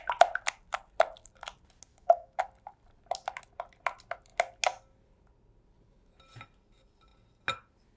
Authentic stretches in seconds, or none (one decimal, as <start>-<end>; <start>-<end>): 0.0-1.9; 2.4-8.0